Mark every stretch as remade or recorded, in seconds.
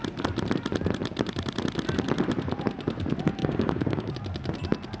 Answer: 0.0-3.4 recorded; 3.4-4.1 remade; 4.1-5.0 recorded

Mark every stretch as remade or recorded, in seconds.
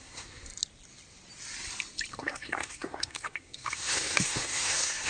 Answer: 0.0-0.5 remade; 0.5-2.1 recorded; 2.1-5.1 remade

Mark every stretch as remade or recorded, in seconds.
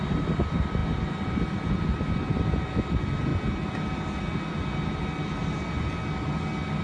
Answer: 0.0-6.8 recorded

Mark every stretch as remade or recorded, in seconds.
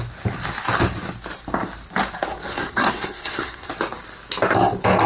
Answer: 0.0-2.3 recorded; 2.3-3.7 remade; 3.7-5.1 recorded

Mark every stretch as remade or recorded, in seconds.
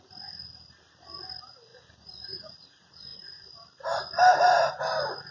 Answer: 0.0-5.3 recorded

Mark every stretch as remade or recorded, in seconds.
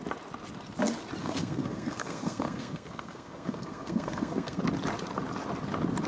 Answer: 0.0-1.2 recorded; 1.2-4.6 remade; 4.6-6.1 recorded